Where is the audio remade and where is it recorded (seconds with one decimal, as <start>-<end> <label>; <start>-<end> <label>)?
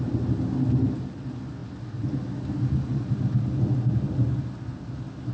0.0-5.3 recorded